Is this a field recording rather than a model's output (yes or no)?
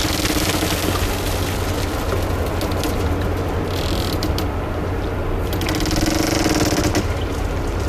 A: yes